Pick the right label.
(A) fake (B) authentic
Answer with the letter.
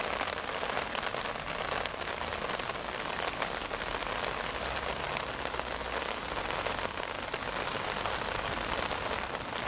B